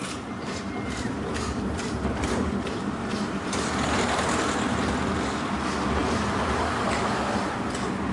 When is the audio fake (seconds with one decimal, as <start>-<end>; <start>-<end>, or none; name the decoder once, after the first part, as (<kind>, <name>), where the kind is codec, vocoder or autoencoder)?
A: 0.0-4.9 (vocoder, BigVGAN v2)